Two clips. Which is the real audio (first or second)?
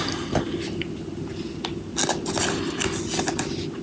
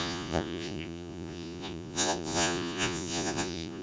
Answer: first